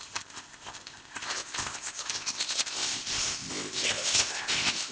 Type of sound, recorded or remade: remade